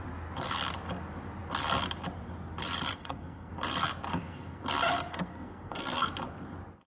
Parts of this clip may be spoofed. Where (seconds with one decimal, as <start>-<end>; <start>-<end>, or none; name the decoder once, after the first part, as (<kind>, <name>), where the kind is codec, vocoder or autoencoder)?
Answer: 2.9-3.5 (codec, SNAC); 4.1-4.6; 5.1-6.1